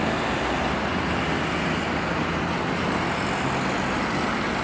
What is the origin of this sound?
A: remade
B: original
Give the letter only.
B